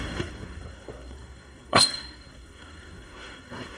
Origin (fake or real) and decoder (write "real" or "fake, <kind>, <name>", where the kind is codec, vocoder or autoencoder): fake, codec, SNAC